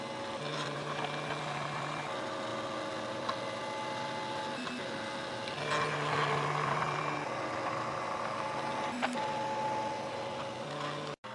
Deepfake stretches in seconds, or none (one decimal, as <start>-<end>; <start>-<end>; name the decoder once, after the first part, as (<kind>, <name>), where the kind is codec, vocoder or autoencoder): 0.5-1.0 (vocoder, BigVGAN v2)